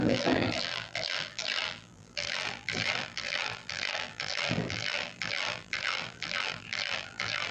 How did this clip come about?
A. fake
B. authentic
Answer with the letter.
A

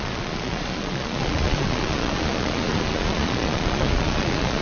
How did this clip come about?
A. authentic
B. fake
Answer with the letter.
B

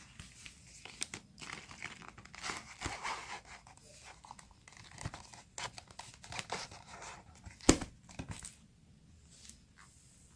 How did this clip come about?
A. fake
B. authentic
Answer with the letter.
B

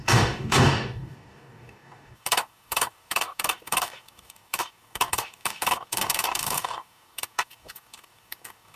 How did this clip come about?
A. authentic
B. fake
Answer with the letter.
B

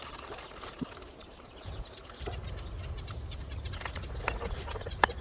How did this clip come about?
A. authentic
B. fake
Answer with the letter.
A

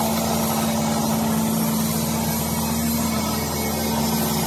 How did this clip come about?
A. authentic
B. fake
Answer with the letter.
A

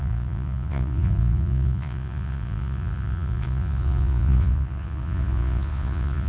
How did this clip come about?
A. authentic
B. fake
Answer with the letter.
B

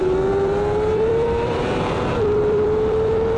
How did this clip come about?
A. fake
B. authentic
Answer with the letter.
A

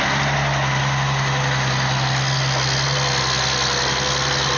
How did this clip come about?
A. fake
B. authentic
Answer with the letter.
B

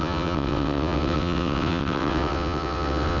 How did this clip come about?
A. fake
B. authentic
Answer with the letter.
A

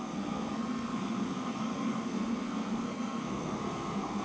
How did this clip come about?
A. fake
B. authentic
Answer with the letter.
A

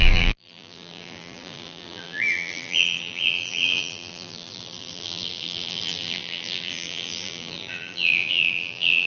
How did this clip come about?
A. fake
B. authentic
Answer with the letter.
A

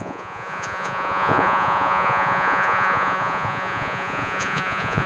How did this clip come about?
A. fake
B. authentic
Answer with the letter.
A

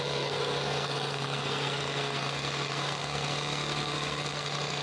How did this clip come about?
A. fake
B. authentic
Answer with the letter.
A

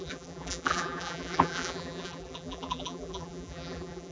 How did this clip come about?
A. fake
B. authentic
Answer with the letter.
A